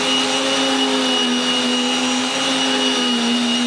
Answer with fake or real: real